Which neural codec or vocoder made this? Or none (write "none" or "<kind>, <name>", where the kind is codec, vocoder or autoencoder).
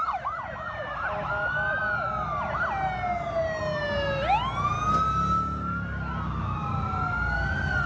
none